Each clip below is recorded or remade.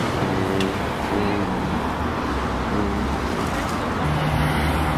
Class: recorded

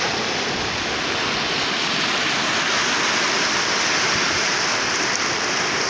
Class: recorded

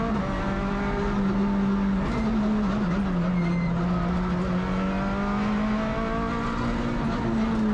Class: recorded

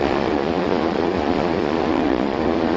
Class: remade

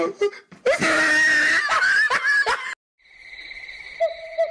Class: recorded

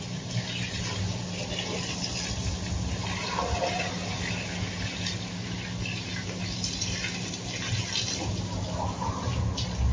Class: recorded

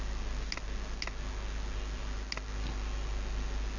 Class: recorded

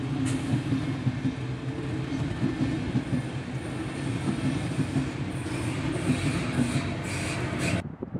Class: recorded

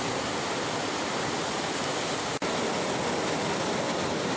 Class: recorded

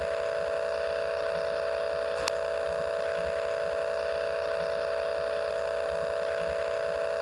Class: recorded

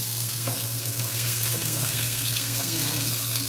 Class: remade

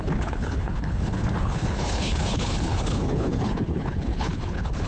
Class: remade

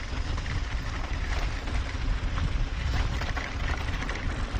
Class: remade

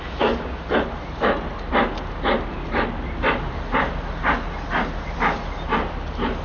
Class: recorded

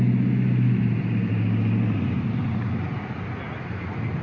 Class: recorded